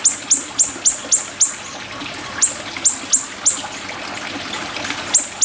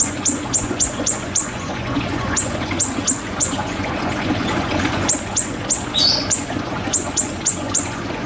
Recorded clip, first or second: first